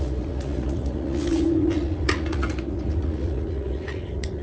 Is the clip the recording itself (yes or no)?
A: no